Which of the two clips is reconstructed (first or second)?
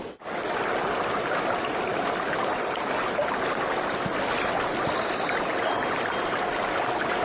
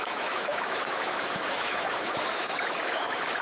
second